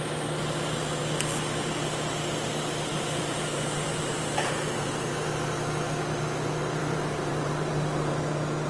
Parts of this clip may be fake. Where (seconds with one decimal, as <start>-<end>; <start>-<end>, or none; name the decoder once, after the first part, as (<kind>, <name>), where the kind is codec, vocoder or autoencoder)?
2.9-5.1 (vocoder, BigVGAN v2); 6.8-8.1